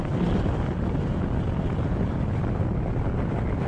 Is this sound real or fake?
real